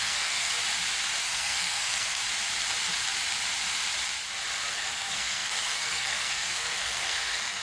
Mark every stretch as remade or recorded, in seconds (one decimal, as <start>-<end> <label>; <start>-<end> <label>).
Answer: 0.0-0.5 remade; 0.5-1.2 recorded; 1.2-2.2 remade; 2.2-4.7 recorded; 4.7-7.6 remade